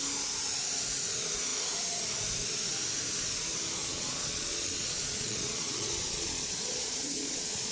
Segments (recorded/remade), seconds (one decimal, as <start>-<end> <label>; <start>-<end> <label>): 0.0-3.8 recorded; 3.8-7.7 remade